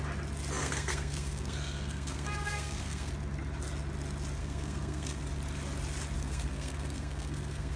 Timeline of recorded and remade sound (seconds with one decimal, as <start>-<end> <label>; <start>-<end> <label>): 0.0-0.6 recorded; 0.6-3.1 remade; 3.1-4.4 recorded; 4.4-5.2 remade; 5.2-6.2 recorded; 6.2-7.8 remade